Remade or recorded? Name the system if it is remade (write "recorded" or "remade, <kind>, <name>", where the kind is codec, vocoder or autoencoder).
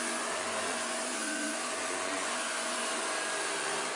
remade, vocoder, Vocos